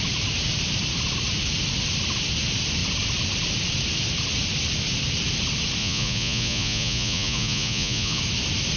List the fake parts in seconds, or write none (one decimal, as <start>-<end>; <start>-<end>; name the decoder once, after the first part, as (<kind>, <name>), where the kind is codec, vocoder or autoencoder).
5.8-8.2 (vocoder, Vocos)

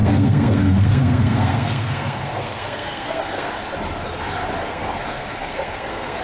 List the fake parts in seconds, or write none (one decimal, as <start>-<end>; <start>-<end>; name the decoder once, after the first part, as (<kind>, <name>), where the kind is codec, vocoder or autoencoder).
0.0-3.5 (codec, SNAC); 4.6-6.2

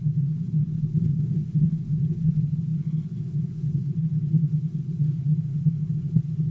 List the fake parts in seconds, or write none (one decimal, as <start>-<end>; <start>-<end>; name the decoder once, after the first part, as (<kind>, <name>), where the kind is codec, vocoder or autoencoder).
0.0-6.5 (codec, HILCodec)